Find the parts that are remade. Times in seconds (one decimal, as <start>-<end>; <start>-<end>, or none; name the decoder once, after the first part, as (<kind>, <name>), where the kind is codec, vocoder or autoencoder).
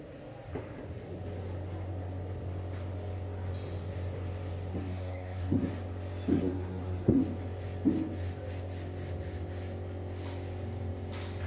4.7-5.7 (codec, SNAC); 6.3-7.2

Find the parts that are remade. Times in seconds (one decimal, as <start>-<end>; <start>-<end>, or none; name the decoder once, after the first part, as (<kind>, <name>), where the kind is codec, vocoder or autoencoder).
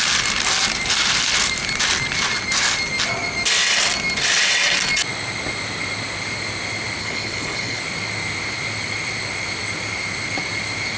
7.0-7.8 (codec, HILCodec)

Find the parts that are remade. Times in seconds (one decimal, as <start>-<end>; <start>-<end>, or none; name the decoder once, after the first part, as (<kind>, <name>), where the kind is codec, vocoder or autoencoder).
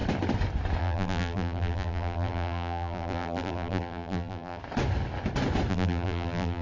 0.8-4.6 (vocoder, BigVGAN v2); 5.7-6.6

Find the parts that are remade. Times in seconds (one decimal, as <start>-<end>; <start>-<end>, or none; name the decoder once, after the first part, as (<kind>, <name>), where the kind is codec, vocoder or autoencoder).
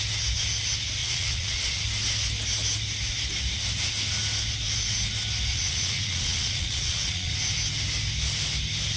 1.0-1.8 (vocoder, Vocos); 5.5-7.3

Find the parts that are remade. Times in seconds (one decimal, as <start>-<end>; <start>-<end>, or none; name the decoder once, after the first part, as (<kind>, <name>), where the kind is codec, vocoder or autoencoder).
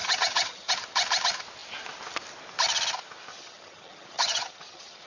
0.0-0.7 (vocoder, HiFi-GAN); 3.3-5.1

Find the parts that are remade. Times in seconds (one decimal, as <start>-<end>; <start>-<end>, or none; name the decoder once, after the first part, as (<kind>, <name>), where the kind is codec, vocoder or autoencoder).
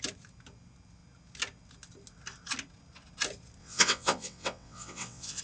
3.6-5.4 (vocoder, WaveNeXt)